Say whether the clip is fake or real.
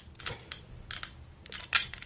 real